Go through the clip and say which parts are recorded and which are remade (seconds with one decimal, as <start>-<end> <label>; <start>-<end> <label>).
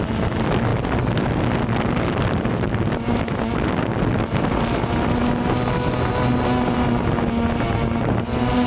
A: 0.0-8.7 recorded